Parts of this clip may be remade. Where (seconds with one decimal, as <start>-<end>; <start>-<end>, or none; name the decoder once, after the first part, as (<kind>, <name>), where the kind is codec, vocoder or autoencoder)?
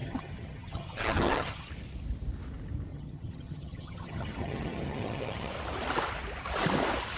0.0-1.7 (vocoder, HiFi-GAN); 2.9-5.5